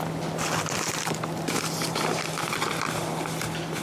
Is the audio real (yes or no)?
yes